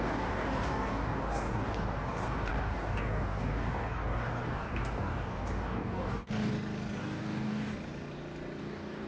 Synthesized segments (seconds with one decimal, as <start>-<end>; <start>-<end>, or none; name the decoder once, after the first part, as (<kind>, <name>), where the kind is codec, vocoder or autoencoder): 0.0-6.5 (codec, DAC); 7.0-7.7; 8.6-9.1